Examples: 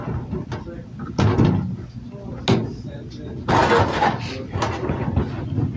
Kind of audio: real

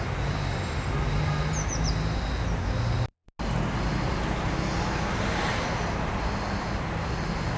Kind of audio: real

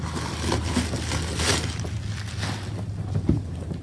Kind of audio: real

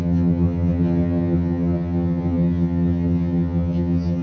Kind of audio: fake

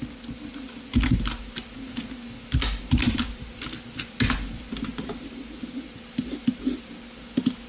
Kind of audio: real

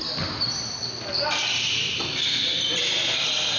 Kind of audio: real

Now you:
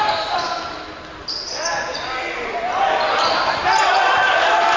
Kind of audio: real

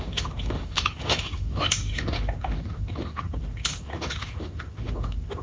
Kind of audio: fake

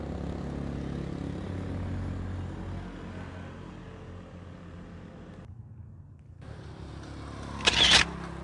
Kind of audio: real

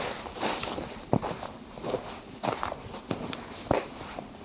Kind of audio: real